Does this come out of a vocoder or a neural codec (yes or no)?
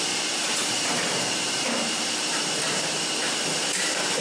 yes